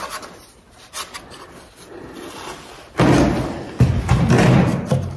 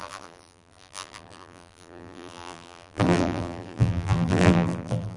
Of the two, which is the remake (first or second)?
second